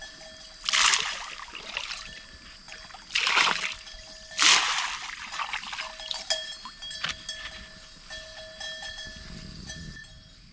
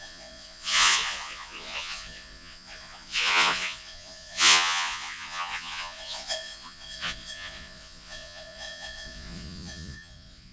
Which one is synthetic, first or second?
second